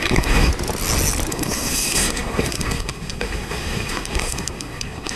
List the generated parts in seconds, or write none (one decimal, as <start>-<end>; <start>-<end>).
0.0-0.5; 1.3-5.2